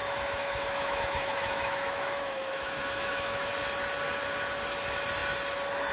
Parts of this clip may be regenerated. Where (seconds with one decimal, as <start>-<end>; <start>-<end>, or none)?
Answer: 0.0-3.5